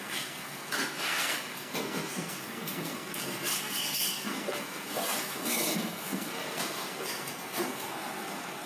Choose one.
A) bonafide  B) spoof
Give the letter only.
B